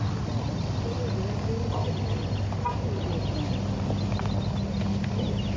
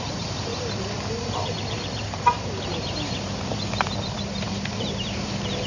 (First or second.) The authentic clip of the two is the first